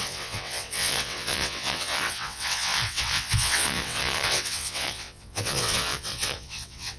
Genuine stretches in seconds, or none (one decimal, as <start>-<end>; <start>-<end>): none